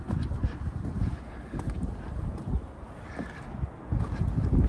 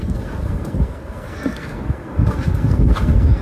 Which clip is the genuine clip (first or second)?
first